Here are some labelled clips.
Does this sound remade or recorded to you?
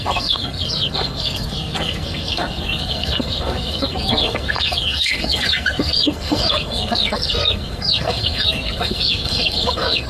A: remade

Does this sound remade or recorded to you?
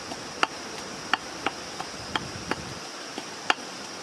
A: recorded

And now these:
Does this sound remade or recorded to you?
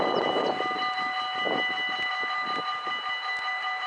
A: recorded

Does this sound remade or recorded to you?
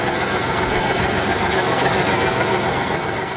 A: remade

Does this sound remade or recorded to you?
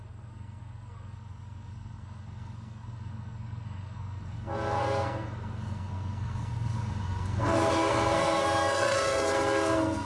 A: remade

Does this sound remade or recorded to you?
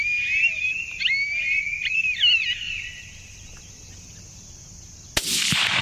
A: recorded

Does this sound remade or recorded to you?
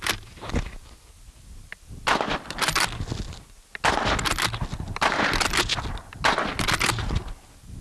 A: recorded